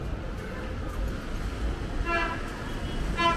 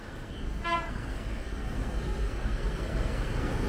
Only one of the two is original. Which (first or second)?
first